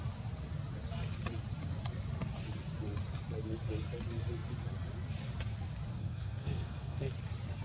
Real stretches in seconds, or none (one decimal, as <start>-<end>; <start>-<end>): 0.0-6.0; 7.1-7.6